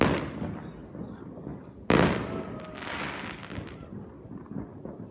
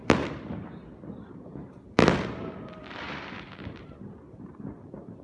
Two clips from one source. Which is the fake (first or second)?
second